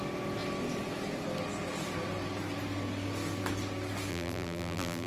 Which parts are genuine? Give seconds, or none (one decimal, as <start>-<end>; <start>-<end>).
0.0-4.1